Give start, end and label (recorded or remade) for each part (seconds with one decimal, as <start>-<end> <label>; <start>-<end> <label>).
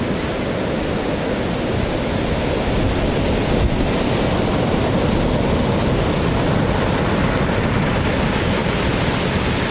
0.0-8.6 recorded; 8.6-9.7 remade